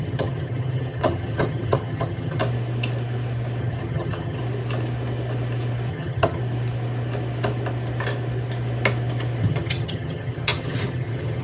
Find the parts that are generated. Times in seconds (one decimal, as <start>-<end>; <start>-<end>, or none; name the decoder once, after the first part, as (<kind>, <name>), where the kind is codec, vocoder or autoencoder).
0.0-2.4 (vocoder, HiFi-GAN); 3.6-4.4; 5.9-6.4; 9.4-11.4